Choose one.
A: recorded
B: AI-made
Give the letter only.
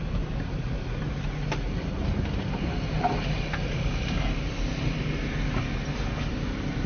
A